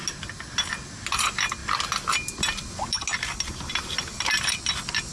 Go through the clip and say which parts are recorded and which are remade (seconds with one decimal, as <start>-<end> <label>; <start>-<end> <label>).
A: 0.0-5.1 recorded